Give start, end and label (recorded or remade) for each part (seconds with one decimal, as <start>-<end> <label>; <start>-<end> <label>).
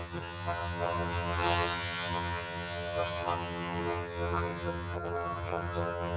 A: 0.0-6.2 remade